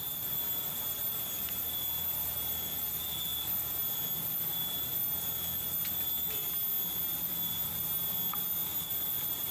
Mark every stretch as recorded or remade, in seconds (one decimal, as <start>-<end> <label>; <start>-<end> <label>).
0.0-9.5 recorded